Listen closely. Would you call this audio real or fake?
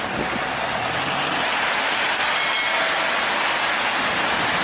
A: real